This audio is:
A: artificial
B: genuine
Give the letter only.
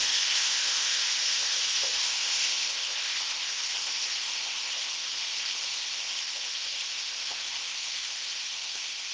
A